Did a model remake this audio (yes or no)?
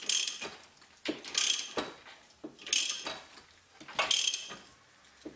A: no